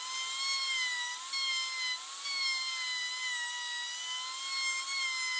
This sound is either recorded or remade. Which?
recorded